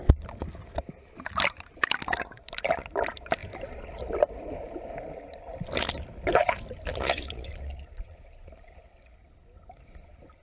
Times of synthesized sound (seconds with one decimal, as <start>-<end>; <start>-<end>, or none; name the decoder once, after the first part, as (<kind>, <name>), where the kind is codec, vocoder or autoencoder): 6.9-8.5 (vocoder, Vocos)